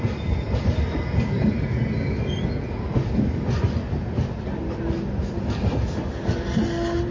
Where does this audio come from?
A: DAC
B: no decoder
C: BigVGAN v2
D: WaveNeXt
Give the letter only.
B